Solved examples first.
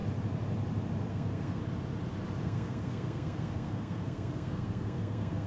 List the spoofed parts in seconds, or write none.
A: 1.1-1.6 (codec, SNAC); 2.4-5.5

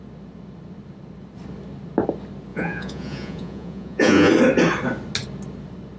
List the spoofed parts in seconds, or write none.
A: 2.5-4.3 (vocoder, Vocos)

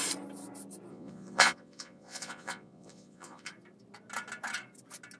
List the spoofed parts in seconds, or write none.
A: 0.9-3.5 (vocoder, Vocos)

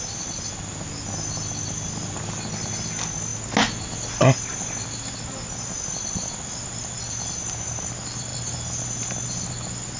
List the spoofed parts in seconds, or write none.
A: none

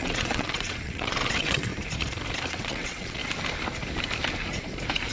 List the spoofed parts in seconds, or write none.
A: 0.0-1.7 (vocoder, WaveNeXt); 2.5-3.2

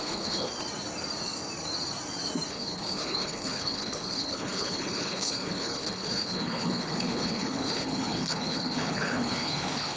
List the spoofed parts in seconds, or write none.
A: 0.0-0.5 (codec, HILCodec); 2.5-10.0

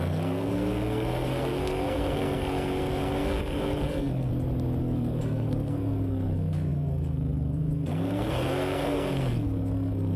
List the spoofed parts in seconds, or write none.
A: 0.0-4.3 (codec, SNAC); 4.8-10.2

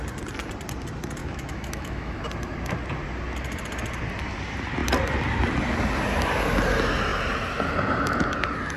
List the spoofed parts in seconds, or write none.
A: 1.2-2.2 (autoencoder, DAC-VAE)